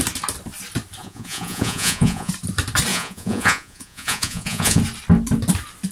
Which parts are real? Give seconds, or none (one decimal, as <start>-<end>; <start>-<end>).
0.0-1.0; 2.3-2.9; 4.8-5.9